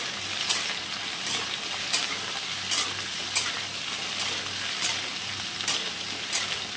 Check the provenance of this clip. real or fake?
real